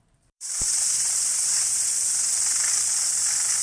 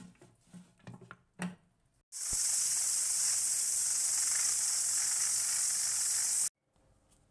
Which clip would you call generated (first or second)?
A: first